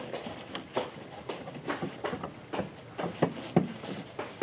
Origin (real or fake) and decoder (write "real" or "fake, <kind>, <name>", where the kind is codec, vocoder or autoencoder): real